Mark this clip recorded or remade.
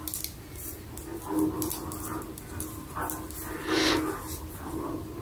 recorded